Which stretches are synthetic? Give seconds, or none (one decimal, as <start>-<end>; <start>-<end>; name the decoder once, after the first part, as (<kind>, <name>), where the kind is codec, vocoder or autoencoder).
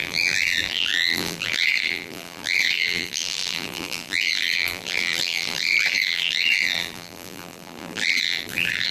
0.0-8.9 (vocoder, BigVGAN v2)